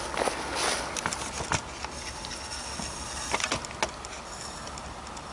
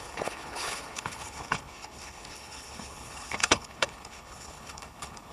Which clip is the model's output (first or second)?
second